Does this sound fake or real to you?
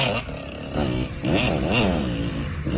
real